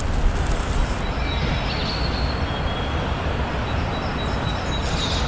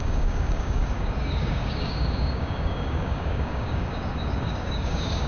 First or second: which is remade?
second